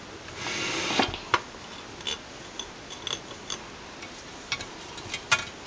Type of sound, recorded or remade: recorded